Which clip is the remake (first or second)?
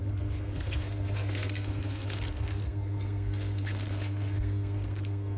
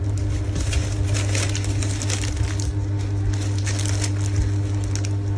first